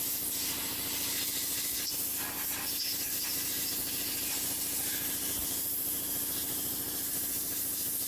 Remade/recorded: recorded